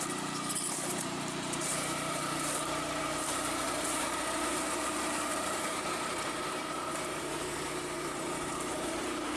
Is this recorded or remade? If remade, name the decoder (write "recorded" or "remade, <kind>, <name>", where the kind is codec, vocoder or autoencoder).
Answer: remade, vocoder, BigVGAN v2